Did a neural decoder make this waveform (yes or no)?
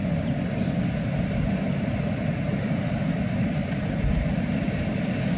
no